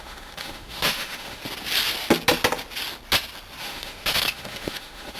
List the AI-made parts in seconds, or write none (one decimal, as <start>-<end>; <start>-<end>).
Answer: 0.0-1.4; 3.6-5.2